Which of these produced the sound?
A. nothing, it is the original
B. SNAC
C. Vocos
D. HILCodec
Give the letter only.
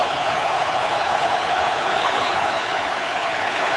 D